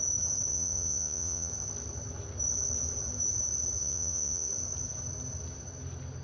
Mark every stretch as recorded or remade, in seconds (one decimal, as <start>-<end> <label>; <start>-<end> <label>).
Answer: 0.0-0.5 recorded; 0.5-1.5 remade; 1.5-3.8 recorded; 3.8-4.5 remade; 4.5-6.2 recorded

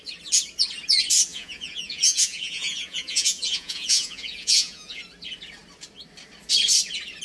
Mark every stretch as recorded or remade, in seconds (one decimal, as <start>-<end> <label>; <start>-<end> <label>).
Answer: 0.0-1.3 recorded; 1.3-5.0 remade; 5.0-7.2 recorded

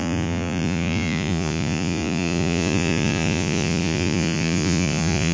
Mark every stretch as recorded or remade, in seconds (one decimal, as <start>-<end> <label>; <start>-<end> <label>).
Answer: 0.0-5.3 remade